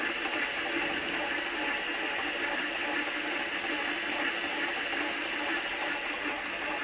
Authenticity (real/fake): real